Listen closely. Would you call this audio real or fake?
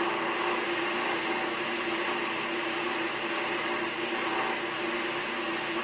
real